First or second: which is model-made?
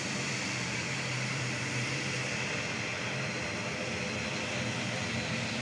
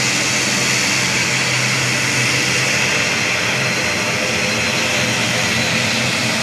first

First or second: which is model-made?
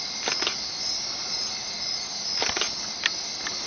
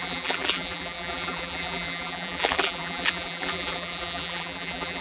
second